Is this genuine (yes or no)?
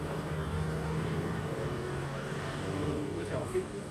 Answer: no